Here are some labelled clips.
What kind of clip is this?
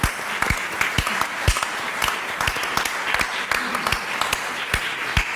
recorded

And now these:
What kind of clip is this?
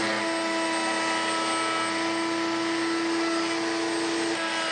recorded